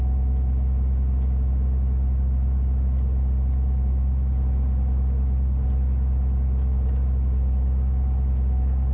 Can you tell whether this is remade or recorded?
recorded